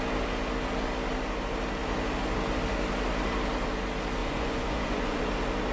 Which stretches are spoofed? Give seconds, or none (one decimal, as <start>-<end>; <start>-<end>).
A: 4.2-5.2